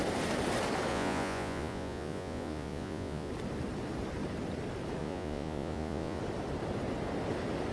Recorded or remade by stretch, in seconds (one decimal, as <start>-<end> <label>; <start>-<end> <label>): 0.0-0.9 recorded; 0.9-3.3 remade; 3.3-5.0 recorded; 5.0-6.2 remade; 6.2-7.7 recorded